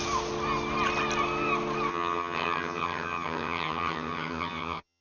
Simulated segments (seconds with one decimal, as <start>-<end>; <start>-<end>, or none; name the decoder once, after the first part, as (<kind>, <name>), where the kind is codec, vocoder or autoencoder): 1.9-5.0 (vocoder, HiFi-GAN)